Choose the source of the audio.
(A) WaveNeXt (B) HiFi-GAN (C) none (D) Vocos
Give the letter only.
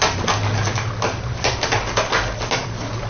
C